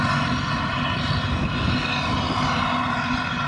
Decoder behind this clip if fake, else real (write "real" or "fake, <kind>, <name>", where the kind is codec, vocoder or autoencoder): real